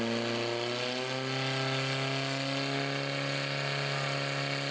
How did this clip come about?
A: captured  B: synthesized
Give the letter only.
A